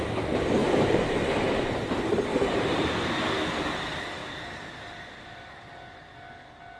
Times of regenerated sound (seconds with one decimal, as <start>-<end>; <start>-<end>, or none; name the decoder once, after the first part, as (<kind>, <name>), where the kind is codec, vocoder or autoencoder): 0.6-1.7 (vocoder, BigVGAN v2); 2.3-2.9; 4.2-4.7